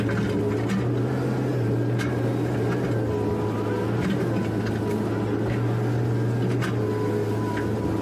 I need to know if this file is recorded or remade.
recorded